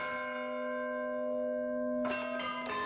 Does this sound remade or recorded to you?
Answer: recorded